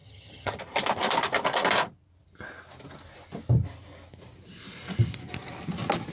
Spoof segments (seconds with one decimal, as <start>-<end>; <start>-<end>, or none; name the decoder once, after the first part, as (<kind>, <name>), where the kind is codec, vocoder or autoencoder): 0.0-0.6 (vocoder, HiFi-GAN)